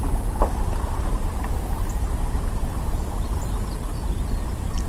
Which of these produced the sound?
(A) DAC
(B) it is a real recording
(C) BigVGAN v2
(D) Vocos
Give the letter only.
B